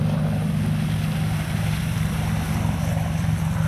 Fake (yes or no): no